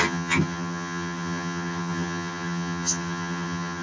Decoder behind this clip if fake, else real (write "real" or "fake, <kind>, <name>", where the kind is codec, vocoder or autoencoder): fake, vocoder, HiFi-GAN